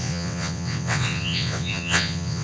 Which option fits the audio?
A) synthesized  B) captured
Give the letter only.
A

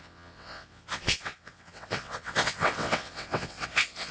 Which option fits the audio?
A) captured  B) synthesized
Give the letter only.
B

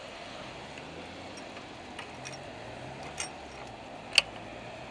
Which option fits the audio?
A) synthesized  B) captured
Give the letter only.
B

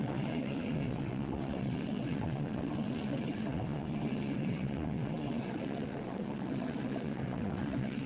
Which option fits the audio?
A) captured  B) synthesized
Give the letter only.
B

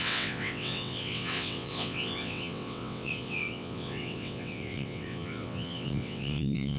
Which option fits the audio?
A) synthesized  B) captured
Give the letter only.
A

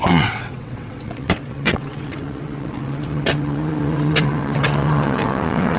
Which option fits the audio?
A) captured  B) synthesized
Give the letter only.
B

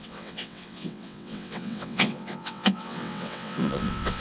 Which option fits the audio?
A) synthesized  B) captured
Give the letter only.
A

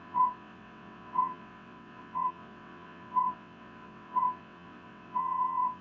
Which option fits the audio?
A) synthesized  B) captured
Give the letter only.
A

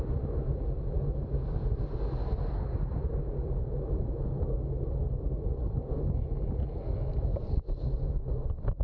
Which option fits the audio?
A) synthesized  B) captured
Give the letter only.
B